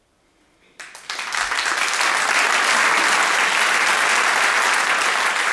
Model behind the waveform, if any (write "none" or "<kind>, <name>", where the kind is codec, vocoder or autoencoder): none